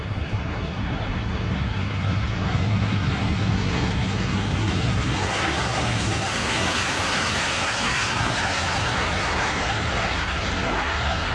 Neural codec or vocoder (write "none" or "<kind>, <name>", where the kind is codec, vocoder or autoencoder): codec, SNAC